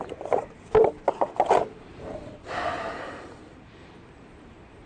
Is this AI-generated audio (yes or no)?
yes